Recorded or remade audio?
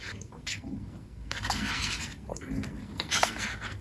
remade